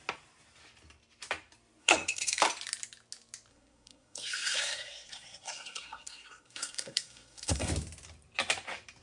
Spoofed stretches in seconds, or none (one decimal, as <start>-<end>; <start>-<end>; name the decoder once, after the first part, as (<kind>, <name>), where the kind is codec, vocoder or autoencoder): 1.8-2.4 (codec, SNAC); 3.5-7.7